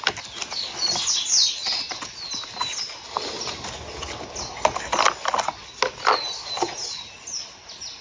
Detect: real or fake real